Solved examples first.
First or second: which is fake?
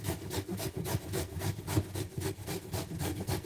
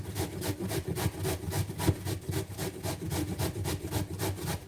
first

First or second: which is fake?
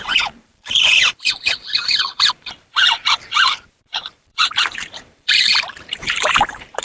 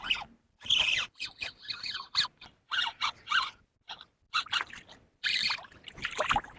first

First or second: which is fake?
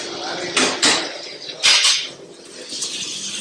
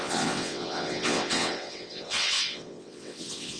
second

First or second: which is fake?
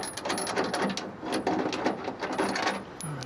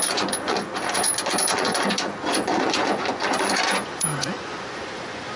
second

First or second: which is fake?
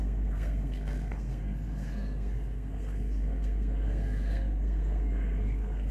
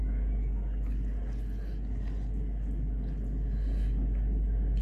first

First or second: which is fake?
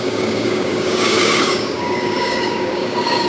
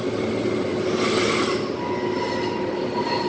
first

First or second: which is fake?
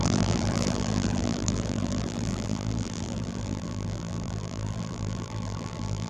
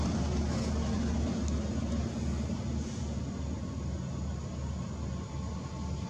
first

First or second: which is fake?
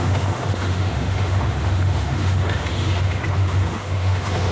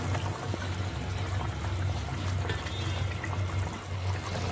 first